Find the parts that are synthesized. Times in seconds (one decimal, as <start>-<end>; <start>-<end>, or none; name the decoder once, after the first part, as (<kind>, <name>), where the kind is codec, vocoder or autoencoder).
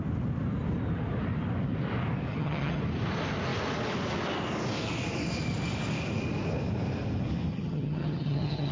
2.3-2.8 (vocoder, HiFi-GAN); 7.5-8.7